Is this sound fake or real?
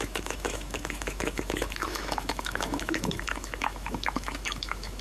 fake